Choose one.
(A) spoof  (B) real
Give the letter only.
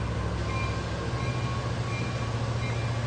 B